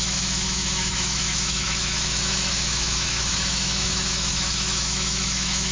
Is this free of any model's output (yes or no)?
no